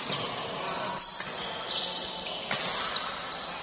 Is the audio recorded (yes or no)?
yes